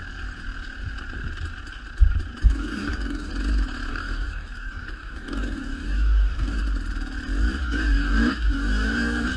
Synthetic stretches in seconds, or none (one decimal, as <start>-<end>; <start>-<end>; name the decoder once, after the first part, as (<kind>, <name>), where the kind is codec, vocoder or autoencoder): 2.4-3.3 (codec, DAC); 3.9-6.6; 7.6-9.4